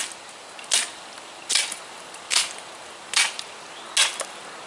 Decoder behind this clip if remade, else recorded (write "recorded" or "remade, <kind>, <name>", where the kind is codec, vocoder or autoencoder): recorded